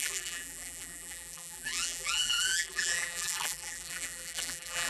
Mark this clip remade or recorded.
remade